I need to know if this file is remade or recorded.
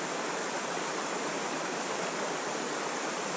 recorded